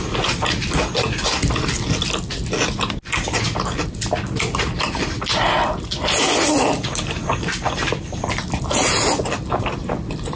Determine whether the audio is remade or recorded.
recorded